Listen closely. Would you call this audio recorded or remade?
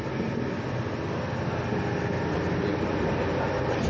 recorded